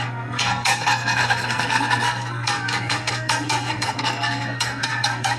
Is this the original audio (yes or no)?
no